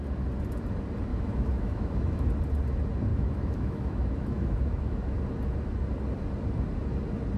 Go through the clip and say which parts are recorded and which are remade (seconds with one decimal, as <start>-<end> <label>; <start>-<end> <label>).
0.0-1.1 recorded; 1.1-2.3 remade; 2.3-3.1 recorded; 3.1-5.2 remade; 5.2-7.4 recorded